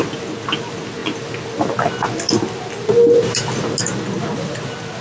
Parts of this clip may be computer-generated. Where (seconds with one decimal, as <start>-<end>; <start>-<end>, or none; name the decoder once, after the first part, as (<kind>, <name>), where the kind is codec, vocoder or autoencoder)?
none